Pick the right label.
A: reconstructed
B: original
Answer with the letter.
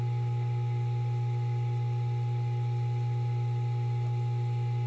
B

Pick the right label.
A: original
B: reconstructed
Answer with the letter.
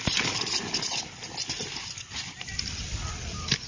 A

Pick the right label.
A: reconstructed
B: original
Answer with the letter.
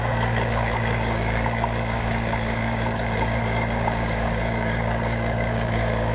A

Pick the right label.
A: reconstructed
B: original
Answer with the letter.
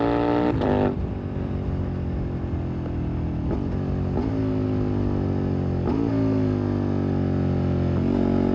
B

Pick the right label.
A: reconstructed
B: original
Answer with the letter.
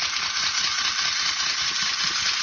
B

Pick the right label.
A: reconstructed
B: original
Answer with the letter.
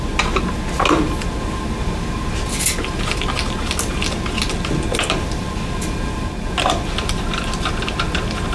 B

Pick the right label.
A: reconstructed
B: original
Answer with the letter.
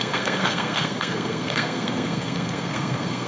A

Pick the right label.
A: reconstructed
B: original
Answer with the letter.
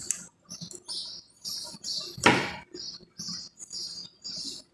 B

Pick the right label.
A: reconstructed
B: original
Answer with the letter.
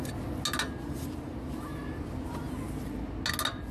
B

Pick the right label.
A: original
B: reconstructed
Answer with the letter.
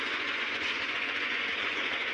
B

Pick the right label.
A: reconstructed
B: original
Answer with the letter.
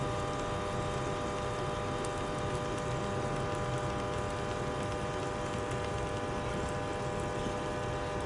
B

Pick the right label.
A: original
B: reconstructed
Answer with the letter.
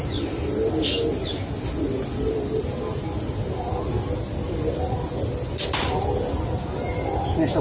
A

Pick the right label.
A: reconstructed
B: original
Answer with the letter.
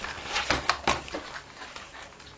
B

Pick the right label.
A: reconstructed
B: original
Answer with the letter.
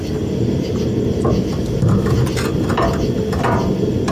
B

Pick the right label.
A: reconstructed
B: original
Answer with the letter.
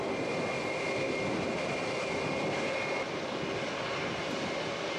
B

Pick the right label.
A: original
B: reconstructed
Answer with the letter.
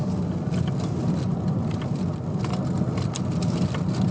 A